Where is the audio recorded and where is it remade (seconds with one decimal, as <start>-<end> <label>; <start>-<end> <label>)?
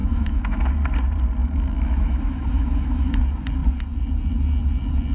0.0-0.6 remade; 0.6-1.4 recorded; 1.4-3.2 remade; 3.2-5.1 recorded